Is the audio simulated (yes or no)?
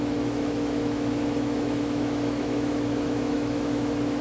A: yes